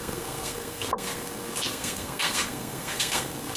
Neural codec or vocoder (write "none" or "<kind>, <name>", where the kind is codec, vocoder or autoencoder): codec, SNAC